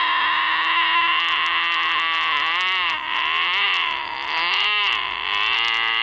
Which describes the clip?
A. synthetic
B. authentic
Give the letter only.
B